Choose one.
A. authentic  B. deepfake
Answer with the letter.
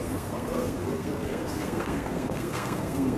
B